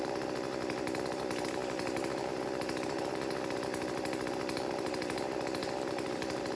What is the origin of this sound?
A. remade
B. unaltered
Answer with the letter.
A